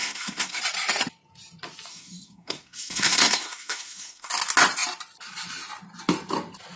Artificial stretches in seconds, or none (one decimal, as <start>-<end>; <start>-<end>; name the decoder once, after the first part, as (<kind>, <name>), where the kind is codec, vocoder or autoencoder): 0.0-0.6 (codec, SNAC); 1.9-4.3